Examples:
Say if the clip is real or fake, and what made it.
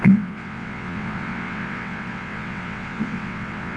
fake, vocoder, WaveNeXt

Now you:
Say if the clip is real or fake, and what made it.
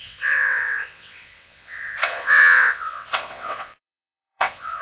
fake, vocoder, WaveNeXt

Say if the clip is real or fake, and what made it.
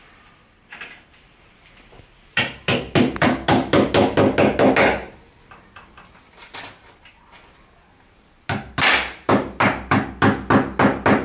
real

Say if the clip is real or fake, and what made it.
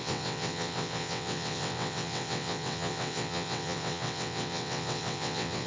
fake, vocoder, WaveNeXt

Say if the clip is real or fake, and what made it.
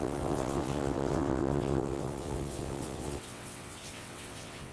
fake, vocoder, WaveNeXt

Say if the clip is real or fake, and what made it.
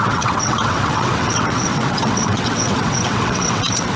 fake, vocoder, WaveNeXt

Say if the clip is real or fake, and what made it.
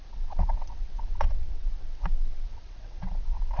fake, vocoder, WaveNeXt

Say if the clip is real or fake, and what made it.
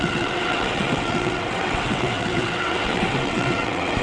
fake, vocoder, WaveNeXt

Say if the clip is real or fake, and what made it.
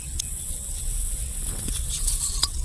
fake, vocoder, WaveNeXt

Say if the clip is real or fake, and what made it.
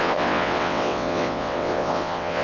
fake, vocoder, WaveNeXt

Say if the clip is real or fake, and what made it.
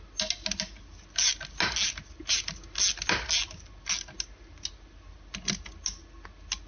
real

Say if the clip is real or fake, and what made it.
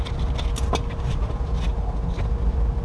real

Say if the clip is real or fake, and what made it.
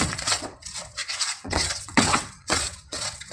fake, vocoder, WaveNeXt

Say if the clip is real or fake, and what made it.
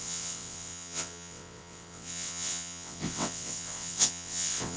fake, vocoder, WaveNeXt